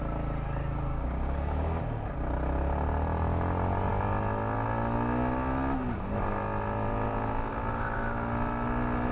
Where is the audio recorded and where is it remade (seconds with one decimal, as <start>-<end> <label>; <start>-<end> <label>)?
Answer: 0.0-0.9 recorded; 0.9-1.8 remade; 1.8-9.1 recorded